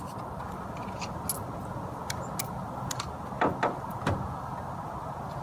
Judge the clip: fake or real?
real